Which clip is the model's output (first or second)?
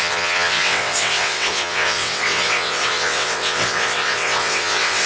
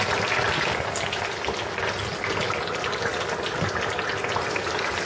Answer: first